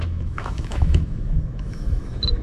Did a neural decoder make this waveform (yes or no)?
yes